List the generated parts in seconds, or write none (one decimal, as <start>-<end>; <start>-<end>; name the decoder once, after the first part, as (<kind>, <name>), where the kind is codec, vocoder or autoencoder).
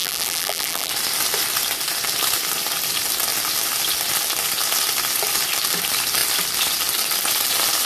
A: 0.0-0.9 (vocoder, BigVGAN v2)